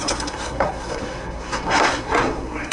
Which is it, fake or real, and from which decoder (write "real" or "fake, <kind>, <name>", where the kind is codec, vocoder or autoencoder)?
fake, codec, SNAC